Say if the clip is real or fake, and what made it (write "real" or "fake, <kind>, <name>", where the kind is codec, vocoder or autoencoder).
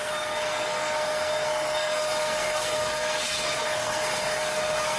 fake, codec, SNAC